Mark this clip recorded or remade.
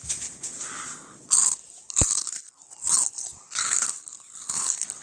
recorded